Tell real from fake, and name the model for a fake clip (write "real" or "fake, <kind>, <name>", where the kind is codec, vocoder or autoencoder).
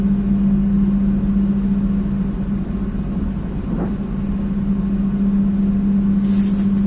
real